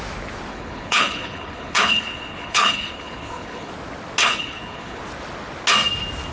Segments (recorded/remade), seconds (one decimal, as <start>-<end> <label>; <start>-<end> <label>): 0.0-0.5 recorded; 0.5-3.7 remade; 3.7-4.2 recorded; 4.2-5.0 remade; 5.0-6.3 recorded